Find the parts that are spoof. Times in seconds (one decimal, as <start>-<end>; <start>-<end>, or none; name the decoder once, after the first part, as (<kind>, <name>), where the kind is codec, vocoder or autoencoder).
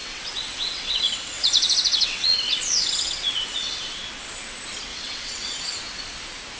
0.0-4.0 (vocoder, WaveNeXt); 4.9-5.8